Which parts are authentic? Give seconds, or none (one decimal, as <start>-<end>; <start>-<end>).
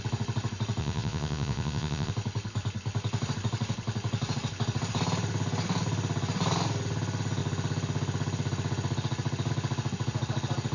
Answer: 0.0-0.8; 2.1-10.7